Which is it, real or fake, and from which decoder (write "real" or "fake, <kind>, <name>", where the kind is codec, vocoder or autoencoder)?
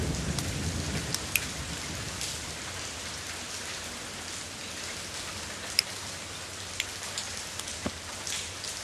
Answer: real